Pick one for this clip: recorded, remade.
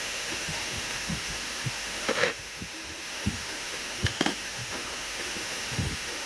remade